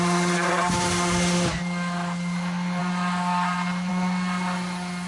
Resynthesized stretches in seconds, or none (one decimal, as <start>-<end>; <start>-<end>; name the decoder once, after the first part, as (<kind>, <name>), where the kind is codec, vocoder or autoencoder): none